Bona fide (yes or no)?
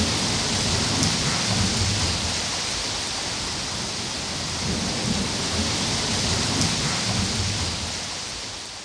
yes